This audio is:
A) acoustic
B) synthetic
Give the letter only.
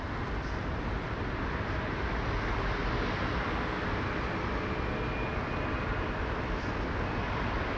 A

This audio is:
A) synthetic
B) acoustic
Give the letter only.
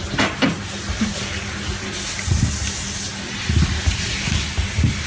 B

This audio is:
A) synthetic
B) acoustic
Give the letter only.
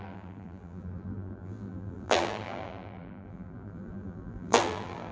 A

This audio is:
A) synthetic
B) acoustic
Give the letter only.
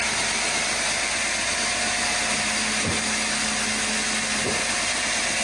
B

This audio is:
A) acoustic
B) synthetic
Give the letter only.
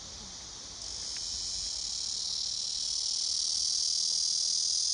A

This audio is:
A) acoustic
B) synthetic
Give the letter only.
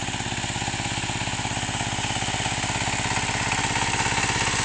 A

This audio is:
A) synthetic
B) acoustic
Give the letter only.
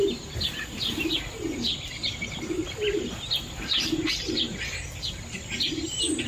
B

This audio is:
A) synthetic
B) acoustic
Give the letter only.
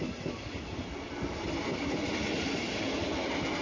B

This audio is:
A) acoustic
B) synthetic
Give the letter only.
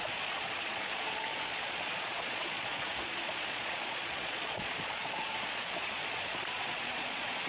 B